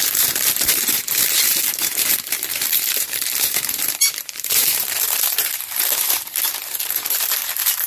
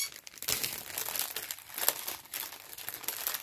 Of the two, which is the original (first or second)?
second